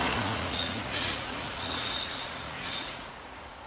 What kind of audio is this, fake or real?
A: fake